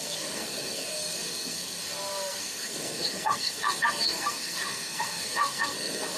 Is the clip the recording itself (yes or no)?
no